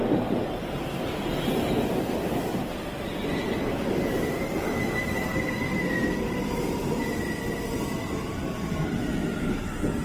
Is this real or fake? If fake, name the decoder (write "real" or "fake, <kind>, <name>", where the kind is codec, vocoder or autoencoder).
real